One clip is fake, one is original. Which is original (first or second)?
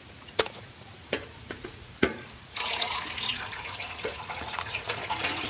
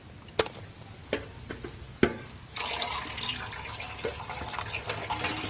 second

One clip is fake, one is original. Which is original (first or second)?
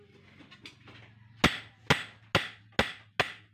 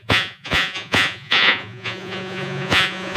first